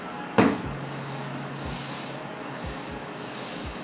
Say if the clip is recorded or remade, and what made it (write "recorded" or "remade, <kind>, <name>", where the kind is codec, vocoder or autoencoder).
remade, codec, DAC